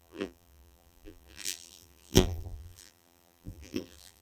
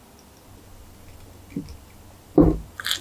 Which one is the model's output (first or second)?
first